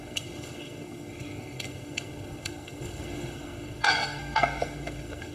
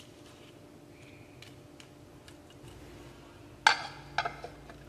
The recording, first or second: second